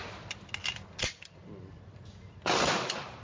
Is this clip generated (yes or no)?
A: no